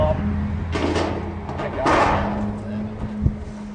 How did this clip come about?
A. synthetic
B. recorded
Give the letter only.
B